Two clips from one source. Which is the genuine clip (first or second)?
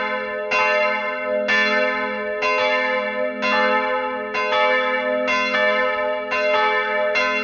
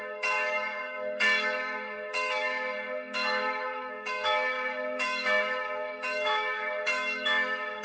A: first